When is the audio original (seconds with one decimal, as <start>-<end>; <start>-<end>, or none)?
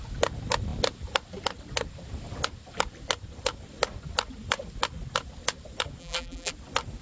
0.0-6.0; 6.5-7.0